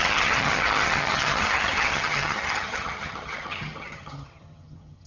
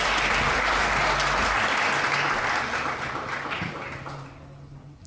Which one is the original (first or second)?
second